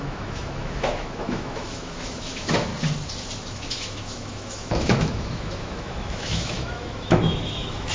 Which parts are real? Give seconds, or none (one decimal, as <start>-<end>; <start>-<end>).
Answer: 2.7-3.5